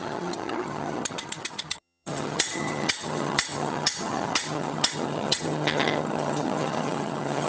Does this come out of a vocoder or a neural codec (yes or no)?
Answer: yes